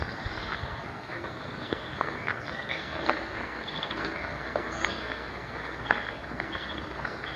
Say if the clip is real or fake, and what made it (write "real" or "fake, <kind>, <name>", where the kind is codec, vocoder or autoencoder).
fake, codec, SNAC